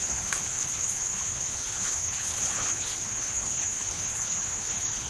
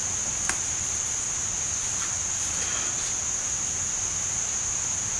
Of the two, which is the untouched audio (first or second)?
second